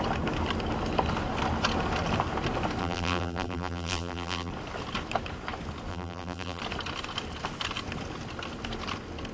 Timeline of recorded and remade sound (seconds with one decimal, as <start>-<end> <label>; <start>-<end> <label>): 0.0-2.8 recorded; 2.8-4.5 remade; 4.5-5.9 recorded; 5.9-6.6 remade; 6.6-9.3 recorded